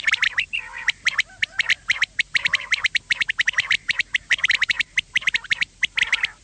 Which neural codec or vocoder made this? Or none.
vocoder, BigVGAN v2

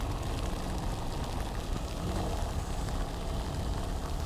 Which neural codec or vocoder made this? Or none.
none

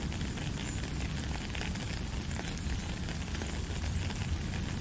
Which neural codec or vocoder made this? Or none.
none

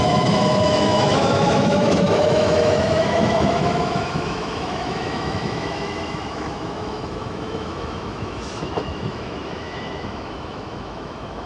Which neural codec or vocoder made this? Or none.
autoencoder, DAC-VAE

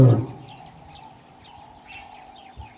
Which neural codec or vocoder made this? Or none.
none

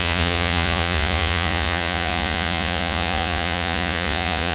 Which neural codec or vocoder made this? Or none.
vocoder, Vocos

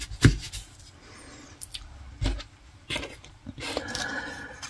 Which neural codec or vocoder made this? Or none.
none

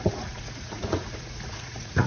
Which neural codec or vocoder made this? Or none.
vocoder, Vocos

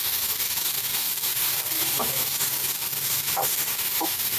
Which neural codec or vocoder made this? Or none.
codec, DAC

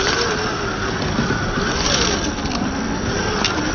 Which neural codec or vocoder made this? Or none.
none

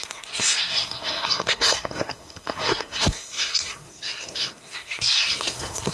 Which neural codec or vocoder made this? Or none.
codec, SNAC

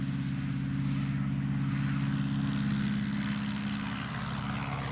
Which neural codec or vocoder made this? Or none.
none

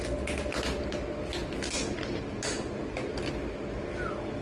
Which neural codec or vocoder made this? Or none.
none